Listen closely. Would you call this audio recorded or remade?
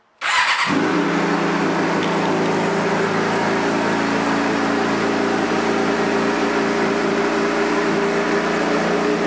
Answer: recorded